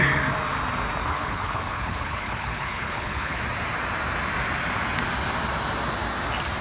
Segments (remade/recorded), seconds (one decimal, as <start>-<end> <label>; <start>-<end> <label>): 0.0-1.0 recorded; 1.0-3.4 remade; 3.4-6.6 recorded